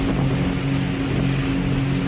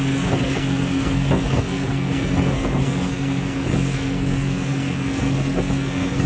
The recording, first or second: first